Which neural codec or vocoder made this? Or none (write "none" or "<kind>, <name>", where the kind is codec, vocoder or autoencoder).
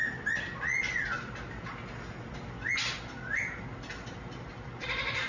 none